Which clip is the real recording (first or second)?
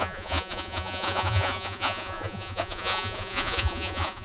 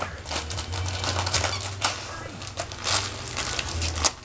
second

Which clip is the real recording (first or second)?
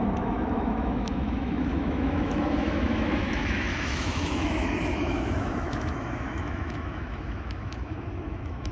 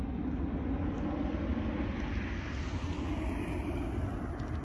second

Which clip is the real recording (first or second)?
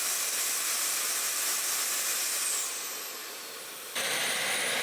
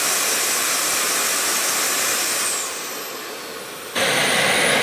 second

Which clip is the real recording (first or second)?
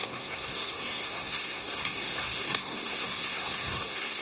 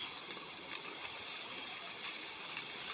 second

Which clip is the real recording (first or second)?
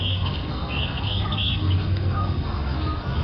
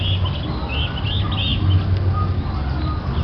second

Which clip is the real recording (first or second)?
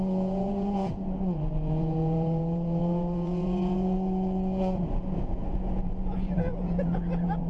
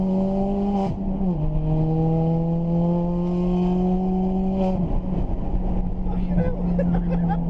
second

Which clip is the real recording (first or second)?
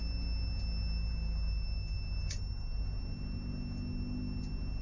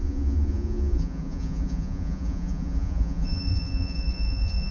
first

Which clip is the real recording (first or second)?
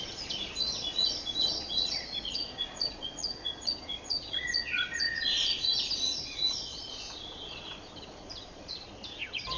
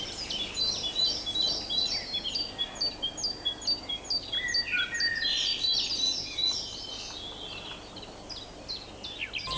second